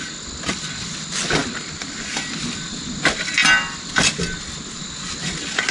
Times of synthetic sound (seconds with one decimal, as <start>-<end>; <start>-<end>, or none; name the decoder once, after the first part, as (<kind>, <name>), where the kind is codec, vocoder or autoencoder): none